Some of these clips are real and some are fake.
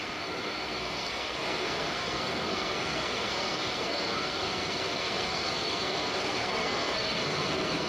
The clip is fake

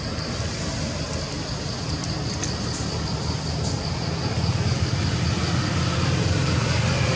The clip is real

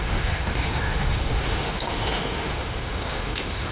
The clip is fake